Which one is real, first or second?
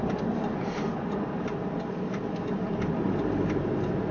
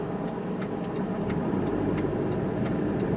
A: second